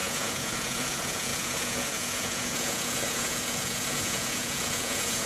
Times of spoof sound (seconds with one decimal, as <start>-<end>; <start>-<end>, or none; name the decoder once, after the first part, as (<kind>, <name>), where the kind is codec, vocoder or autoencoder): 0.0-5.3 (vocoder, Vocos)